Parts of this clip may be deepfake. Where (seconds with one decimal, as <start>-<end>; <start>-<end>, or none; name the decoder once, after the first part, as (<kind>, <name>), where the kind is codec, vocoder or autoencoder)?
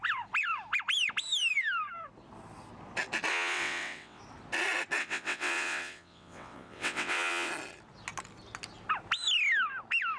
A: 3.3-4.2 (vocoder, WaveNeXt); 5.0-7.5